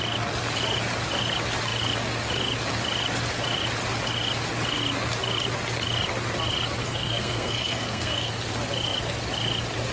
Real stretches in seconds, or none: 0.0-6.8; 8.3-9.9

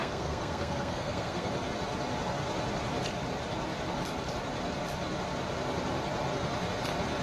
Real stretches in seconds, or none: 1.5-7.2

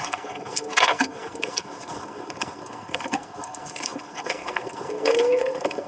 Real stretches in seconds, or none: none

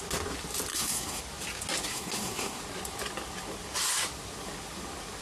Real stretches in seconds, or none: 0.0-0.7; 1.2-1.9; 2.6-5.2

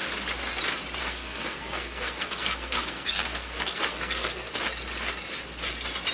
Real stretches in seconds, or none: 0.0-1.0; 4.6-6.1